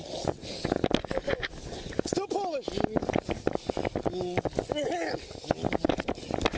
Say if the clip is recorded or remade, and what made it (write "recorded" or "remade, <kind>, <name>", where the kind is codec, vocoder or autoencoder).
recorded